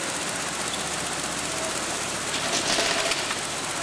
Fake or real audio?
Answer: real